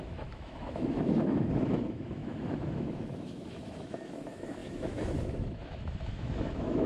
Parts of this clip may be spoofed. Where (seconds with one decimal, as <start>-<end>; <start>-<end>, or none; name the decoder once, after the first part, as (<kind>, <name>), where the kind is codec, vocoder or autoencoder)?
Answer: 0.0-6.9 (autoencoder, DAC-VAE)